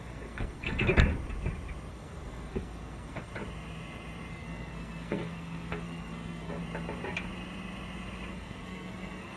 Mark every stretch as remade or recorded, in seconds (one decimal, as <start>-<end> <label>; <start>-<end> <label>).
0.0-0.9 remade; 0.9-1.9 recorded; 1.9-3.3 remade; 3.3-4.3 recorded; 4.3-6.6 remade; 6.6-8.3 recorded; 8.3-9.4 remade